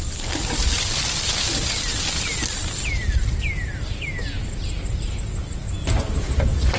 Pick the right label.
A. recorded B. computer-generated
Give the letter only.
A